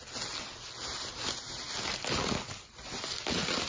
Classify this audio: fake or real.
real